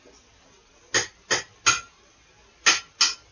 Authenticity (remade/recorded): recorded